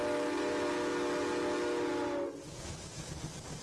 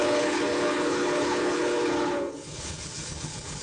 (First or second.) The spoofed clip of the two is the second